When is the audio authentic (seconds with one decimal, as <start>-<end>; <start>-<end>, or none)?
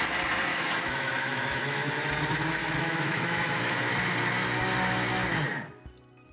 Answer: 0.0-0.5; 2.1-2.6; 3.9-6.3